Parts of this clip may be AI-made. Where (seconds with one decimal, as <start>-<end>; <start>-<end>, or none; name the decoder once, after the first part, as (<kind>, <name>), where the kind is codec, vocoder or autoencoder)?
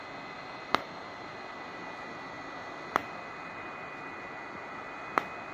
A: none